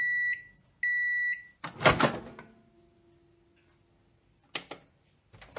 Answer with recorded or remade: recorded